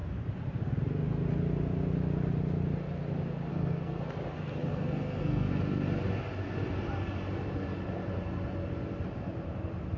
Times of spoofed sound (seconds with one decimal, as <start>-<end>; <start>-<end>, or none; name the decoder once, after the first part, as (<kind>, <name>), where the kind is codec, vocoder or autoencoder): 3.5-4.0 (codec, SNAC); 4.7-5.5